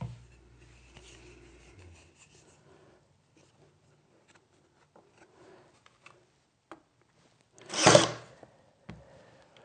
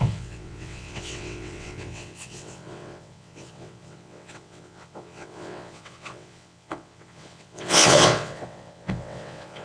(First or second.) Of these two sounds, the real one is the first